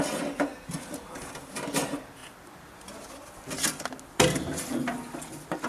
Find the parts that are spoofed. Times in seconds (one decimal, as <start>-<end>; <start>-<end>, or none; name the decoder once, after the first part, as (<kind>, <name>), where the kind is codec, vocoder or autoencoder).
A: 0.5-1.3 (vocoder, BigVGAN v2)